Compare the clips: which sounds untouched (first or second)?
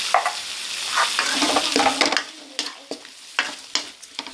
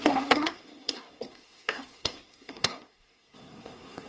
first